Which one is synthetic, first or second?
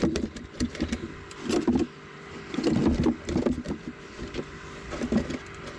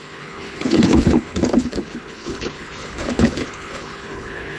second